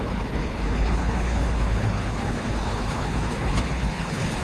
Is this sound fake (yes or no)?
yes